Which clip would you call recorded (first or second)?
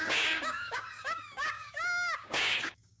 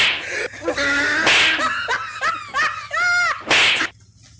second